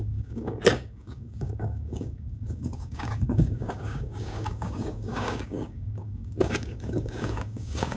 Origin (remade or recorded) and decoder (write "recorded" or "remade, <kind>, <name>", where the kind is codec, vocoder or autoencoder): remade, codec, DAC